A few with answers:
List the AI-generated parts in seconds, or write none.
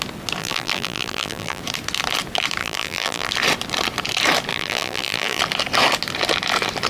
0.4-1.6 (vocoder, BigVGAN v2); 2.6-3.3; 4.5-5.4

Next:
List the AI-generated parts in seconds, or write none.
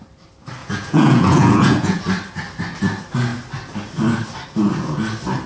0.6-2.0 (vocoder, Vocos)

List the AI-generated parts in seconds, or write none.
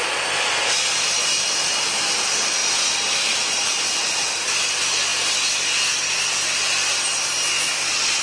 none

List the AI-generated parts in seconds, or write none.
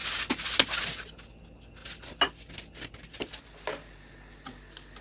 none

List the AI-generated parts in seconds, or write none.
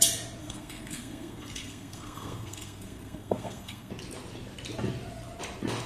0.4-3.9 (codec, SNAC)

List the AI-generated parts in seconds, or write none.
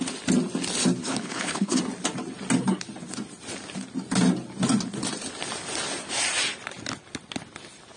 1.0-1.8 (codec, HILCodec)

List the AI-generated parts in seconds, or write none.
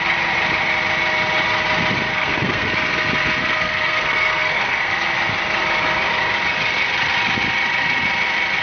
2.1-2.7 (codec, SNAC); 3.4-4.9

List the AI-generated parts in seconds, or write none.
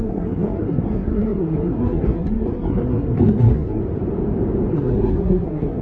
0.0-3.8 (codec, SNAC); 4.7-5.8